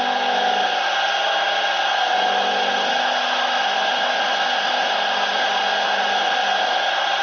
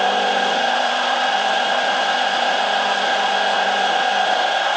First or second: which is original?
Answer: first